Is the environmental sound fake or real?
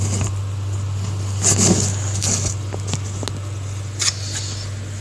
real